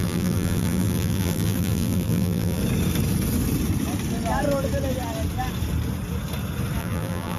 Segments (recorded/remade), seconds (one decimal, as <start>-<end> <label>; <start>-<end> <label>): 0.0-2.6 remade; 2.6-6.8 recorded; 6.8-7.4 remade